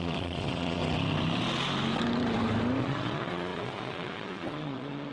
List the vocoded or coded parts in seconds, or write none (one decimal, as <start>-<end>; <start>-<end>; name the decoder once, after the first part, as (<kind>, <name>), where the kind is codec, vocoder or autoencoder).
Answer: 0.0-0.8 (vocoder, Vocos); 2.8-5.1